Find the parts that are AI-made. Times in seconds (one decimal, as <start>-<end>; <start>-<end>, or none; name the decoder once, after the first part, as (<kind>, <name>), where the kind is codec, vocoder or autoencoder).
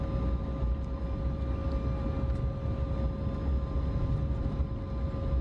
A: none